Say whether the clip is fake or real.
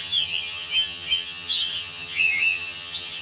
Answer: fake